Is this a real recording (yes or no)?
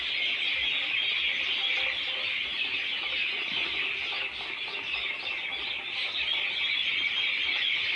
yes